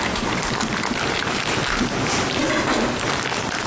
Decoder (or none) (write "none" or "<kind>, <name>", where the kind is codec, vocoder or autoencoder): vocoder, BigVGAN v2